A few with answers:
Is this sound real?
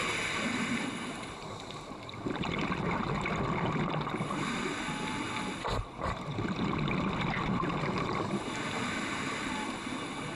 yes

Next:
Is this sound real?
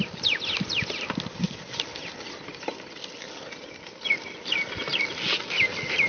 yes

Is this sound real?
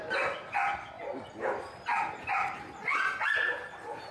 yes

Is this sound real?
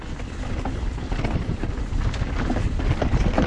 yes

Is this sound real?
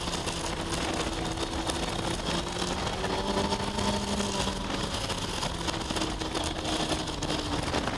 yes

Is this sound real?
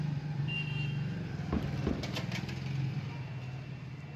yes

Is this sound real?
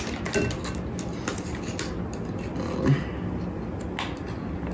yes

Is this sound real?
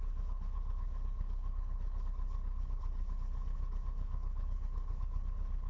no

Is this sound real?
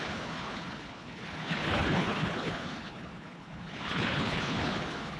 no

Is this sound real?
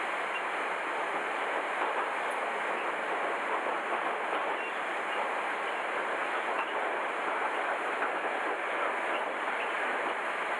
yes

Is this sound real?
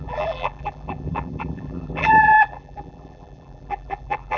no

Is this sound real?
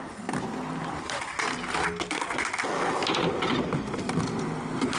yes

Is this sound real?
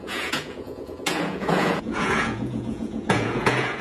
no